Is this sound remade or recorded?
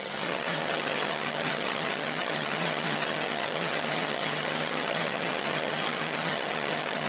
remade